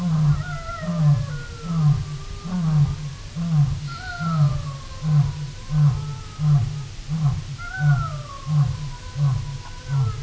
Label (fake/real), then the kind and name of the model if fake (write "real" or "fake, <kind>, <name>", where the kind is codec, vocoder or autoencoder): real